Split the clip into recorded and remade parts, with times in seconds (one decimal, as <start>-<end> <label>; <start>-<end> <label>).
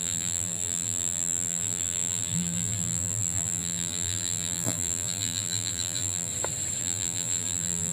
0.0-6.3 remade; 6.3-6.8 recorded; 6.8-7.9 remade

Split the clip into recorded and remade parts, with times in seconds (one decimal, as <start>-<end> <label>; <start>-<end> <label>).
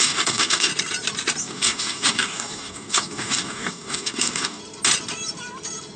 0.0-0.7 remade; 0.7-1.4 recorded; 1.4-4.6 remade; 4.6-6.0 recorded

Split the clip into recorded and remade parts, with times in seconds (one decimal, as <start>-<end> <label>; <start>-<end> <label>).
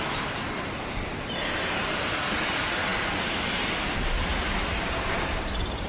0.0-5.9 remade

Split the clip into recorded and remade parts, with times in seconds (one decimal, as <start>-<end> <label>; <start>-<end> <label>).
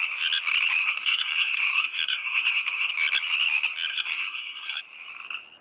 0.0-0.8 recorded; 0.8-2.9 remade; 2.9-3.9 recorded; 3.9-4.8 remade; 4.8-5.6 recorded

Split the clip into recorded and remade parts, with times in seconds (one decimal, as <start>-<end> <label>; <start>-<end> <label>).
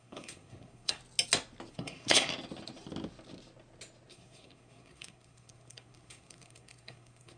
0.0-1.0 remade; 1.0-1.7 recorded; 1.7-2.3 remade; 2.3-4.1 recorded; 4.1-7.4 remade